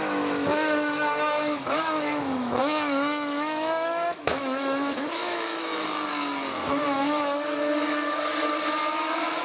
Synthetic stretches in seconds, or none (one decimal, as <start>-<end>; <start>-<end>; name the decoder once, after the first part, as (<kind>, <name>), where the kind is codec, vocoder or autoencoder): 0.0-5.7 (autoencoder, DAC-VAE); 6.7-8.3; 9.0-9.4